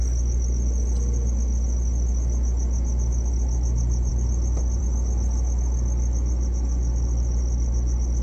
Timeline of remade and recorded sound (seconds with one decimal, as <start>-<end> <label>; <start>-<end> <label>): 0.0-8.2 recorded